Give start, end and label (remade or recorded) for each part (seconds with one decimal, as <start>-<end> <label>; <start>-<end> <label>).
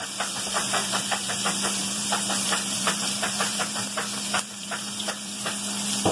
0.0-0.8 recorded; 0.8-1.3 remade; 1.3-1.8 recorded; 1.8-5.5 remade; 5.5-6.1 recorded